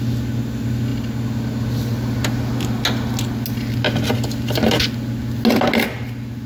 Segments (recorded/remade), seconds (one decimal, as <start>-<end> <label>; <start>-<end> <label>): 0.0-6.5 recorded